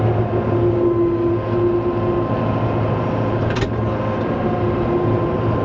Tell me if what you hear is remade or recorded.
recorded